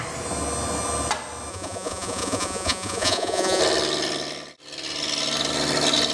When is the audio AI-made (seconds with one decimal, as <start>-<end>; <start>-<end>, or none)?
1.5-3.6